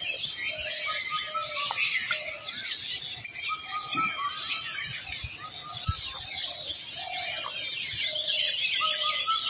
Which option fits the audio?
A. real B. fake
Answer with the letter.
A